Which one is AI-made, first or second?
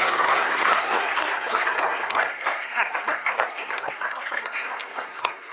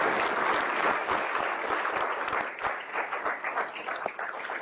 first